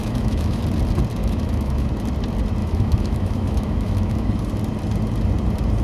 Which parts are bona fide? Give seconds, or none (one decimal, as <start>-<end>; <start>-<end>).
0.6-1.2; 1.9-2.6; 4.3-5.8